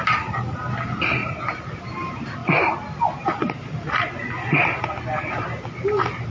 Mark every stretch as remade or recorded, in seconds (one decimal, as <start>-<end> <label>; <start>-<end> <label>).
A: 0.0-6.3 recorded